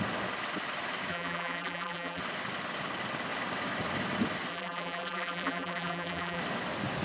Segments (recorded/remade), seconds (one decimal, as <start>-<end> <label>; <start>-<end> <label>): 0.0-1.1 recorded; 1.1-2.2 remade; 2.2-4.5 recorded; 4.5-6.4 remade; 6.4-7.0 recorded